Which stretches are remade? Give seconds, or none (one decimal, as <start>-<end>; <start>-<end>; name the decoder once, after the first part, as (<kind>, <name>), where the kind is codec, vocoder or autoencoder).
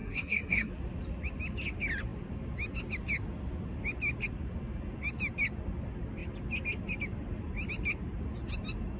0.0-0.7 (codec, SNAC)